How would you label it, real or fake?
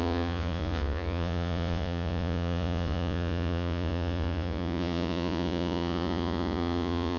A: fake